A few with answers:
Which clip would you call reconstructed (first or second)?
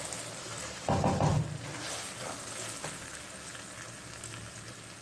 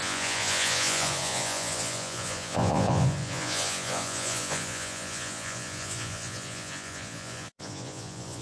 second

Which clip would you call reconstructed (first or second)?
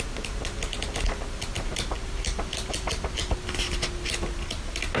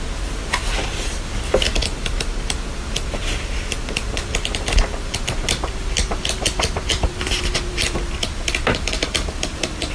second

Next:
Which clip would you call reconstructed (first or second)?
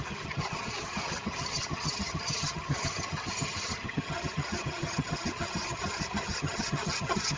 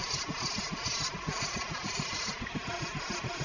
first